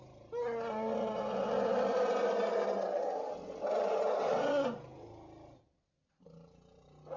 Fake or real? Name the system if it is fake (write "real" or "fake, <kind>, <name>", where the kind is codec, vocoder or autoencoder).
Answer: real